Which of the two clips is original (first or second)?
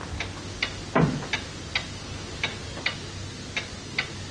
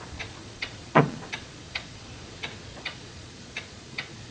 first